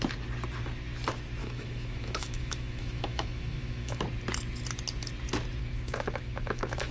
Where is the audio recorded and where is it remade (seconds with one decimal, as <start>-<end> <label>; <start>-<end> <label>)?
0.0-1.4 recorded; 1.4-4.0 remade; 4.0-5.6 recorded; 5.6-6.9 remade